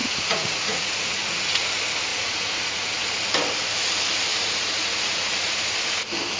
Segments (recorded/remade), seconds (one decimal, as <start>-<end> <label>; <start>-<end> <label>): 0.0-1.7 remade; 1.7-2.1 recorded; 2.1-3.1 remade; 3.1-4.3 recorded; 4.3-5.8 remade; 5.8-6.4 recorded